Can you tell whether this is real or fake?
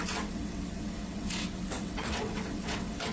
fake